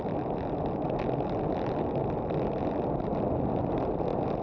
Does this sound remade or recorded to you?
recorded